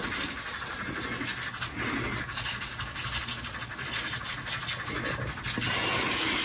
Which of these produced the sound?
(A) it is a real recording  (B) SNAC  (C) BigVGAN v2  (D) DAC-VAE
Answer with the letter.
A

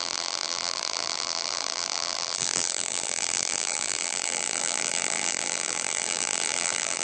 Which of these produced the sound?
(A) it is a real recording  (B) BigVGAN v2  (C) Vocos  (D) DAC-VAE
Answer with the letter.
B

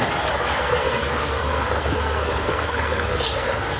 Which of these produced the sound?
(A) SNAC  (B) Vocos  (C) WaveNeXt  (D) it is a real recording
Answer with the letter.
A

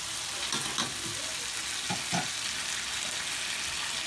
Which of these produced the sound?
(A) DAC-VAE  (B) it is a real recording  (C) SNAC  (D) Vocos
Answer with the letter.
B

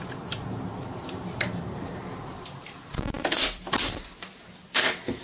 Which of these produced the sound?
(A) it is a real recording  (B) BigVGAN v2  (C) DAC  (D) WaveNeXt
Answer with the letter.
B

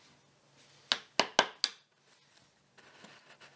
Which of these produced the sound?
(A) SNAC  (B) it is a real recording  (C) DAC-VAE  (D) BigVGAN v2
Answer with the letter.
B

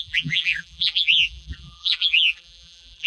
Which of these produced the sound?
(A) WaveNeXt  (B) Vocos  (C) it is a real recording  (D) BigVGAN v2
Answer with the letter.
D